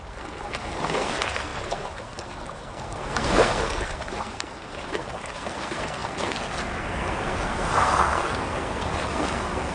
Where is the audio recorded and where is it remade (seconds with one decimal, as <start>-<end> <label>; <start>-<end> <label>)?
0.0-9.7 remade